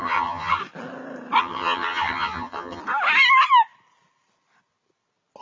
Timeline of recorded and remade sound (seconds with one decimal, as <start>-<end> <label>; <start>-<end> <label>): 0.0-0.6 remade; 0.6-1.4 recorded; 1.4-2.8 remade; 2.8-5.4 recorded